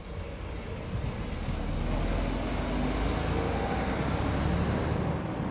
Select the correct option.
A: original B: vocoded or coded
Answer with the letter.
A